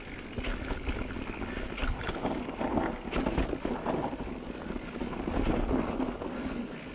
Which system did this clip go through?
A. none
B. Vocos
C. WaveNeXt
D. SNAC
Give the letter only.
A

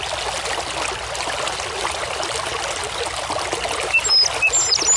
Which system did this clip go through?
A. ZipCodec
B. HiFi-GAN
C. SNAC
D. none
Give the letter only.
D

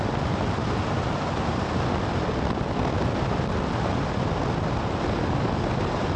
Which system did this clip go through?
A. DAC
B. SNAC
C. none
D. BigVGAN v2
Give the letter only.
C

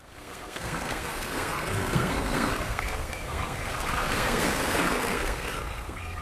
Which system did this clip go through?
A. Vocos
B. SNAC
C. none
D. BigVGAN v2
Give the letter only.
B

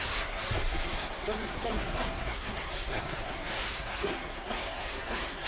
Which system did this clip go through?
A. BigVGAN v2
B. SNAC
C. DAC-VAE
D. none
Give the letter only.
B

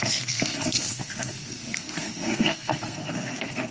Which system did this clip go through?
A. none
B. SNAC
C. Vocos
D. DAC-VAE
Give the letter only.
B